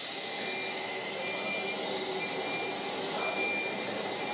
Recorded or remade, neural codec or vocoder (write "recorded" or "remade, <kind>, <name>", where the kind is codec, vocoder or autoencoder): recorded